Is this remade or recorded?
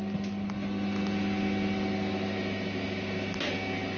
recorded